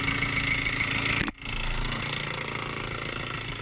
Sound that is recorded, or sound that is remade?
recorded